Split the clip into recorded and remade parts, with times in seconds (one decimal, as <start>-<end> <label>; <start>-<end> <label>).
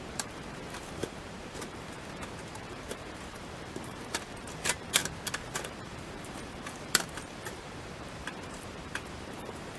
0.0-5.0 remade; 5.0-5.5 recorded; 5.5-9.8 remade